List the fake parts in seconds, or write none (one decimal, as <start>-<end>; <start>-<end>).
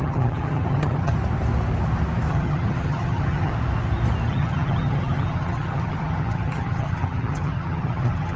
0.0-1.1; 2.3-3.5; 4.3-8.4